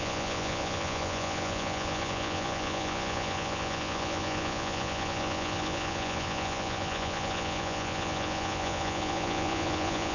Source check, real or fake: fake